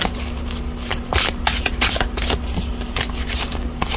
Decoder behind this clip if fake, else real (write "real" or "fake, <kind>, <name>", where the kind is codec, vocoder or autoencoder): real